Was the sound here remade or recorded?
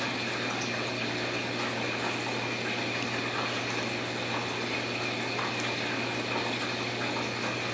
recorded